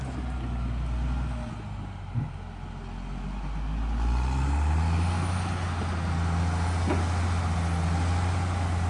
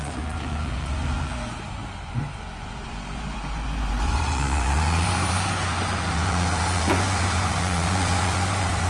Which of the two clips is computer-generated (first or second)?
second